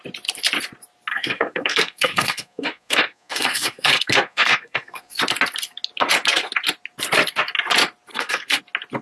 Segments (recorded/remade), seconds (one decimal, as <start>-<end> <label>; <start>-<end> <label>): 0.0-1.1 recorded; 1.1-5.2 remade; 5.2-8.1 recorded; 8.1-8.6 remade; 8.6-9.0 recorded